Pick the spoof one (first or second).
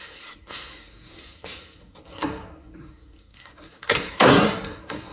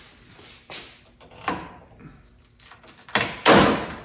first